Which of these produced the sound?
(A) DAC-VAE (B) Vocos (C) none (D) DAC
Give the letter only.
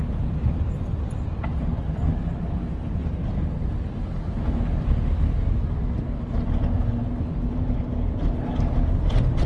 C